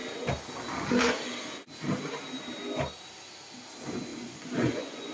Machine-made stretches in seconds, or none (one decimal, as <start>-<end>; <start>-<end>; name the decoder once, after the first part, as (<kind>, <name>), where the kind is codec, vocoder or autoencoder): 4.1-5.1 (vocoder, Vocos)